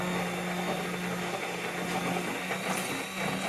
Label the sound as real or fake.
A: real